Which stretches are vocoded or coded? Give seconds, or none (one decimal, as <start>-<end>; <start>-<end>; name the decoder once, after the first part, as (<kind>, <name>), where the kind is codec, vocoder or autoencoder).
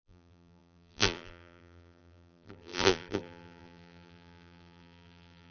0.0-5.5 (vocoder, BigVGAN v2)